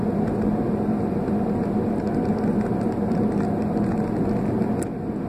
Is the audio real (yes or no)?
yes